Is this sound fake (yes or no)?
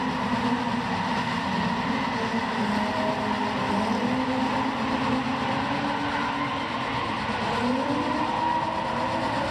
no